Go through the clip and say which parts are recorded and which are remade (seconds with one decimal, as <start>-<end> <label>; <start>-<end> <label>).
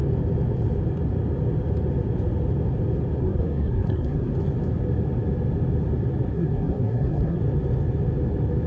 0.0-3.2 recorded; 3.2-4.3 remade; 4.3-6.3 recorded; 6.3-7.4 remade; 7.4-8.7 recorded